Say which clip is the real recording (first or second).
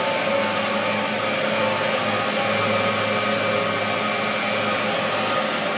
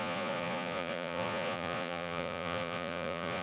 first